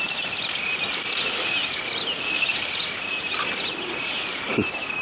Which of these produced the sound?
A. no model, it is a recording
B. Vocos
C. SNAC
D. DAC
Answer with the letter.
A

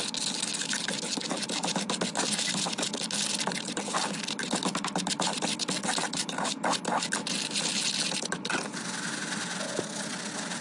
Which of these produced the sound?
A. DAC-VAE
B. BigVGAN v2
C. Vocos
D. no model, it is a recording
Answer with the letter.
D